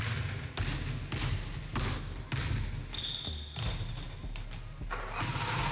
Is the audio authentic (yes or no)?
yes